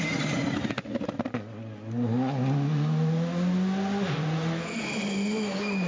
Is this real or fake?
real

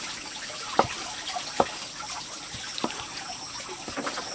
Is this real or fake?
real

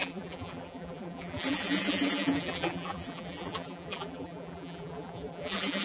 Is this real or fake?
fake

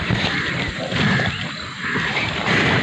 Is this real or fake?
fake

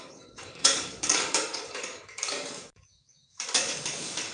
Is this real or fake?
fake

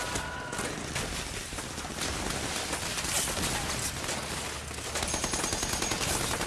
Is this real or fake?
real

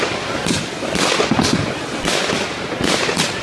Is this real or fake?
real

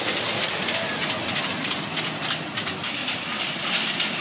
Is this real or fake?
real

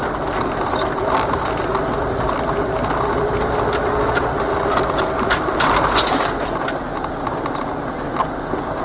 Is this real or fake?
real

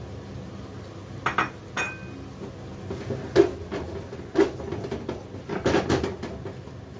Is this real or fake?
real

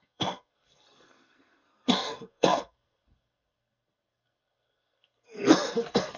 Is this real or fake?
fake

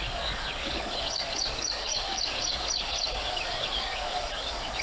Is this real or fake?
fake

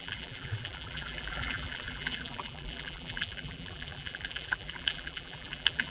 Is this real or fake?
fake